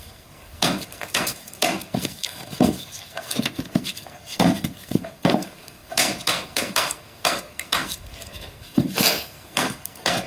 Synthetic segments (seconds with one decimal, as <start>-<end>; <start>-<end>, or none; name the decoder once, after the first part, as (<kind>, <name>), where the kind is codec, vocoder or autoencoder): 0.0-10.3 (codec, SNAC)